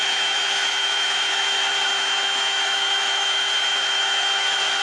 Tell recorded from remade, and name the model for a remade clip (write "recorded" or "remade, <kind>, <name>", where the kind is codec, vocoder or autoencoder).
remade, autoencoder, DAC-VAE